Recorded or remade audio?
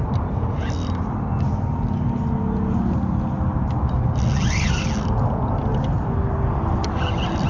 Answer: recorded